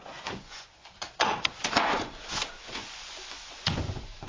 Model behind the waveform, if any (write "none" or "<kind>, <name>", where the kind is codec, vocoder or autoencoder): vocoder, Vocos